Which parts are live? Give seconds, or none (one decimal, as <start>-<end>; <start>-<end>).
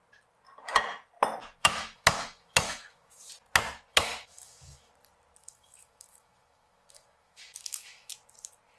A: 0.0-1.6; 3.2-3.9; 4.9-5.4; 8.1-8.8